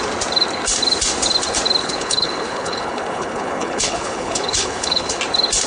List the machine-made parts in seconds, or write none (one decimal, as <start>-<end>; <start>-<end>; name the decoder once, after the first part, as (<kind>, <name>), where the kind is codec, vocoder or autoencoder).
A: 1.8-5.2 (codec, HILCodec)